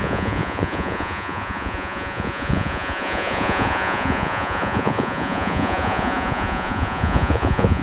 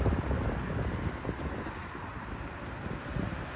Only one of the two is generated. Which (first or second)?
first